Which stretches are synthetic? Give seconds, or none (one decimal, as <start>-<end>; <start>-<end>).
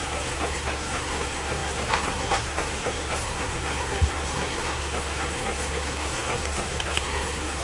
0.0-7.6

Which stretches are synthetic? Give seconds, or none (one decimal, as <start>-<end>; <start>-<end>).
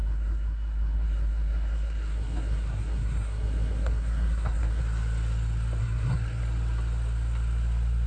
0.0-4.8; 5.8-6.4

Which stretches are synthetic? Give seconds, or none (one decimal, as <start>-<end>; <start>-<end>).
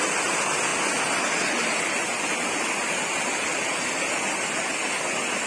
none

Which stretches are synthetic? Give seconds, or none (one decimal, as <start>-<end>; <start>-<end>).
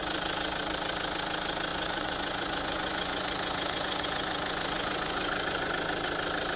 1.7-5.7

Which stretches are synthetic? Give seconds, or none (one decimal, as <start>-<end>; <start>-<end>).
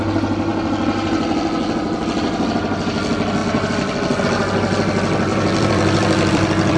5.3-6.8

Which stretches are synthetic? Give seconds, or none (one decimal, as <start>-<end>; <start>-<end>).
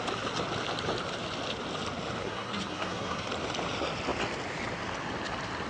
2.2-3.3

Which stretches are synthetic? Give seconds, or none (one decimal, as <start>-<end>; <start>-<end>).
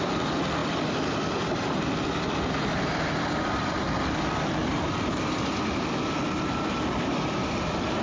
0.0-8.0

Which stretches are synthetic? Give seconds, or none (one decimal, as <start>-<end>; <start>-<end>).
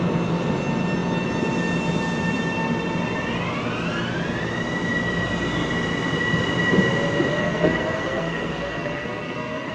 7.4-9.7